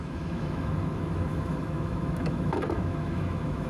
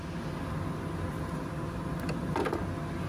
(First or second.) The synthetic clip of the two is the first